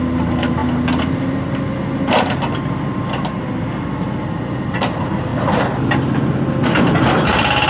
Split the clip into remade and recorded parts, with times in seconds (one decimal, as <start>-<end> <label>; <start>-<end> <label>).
0.0-7.7 recorded